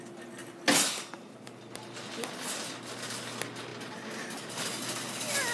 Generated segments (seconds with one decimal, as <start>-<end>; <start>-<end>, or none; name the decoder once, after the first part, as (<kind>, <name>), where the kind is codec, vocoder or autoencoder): none